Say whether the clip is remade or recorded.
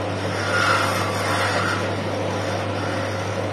recorded